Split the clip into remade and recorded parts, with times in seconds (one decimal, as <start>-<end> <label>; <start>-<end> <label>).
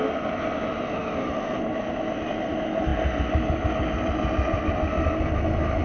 0.0-5.8 recorded